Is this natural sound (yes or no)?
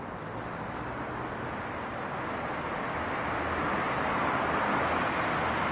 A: yes